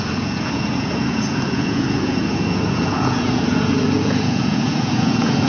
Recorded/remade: remade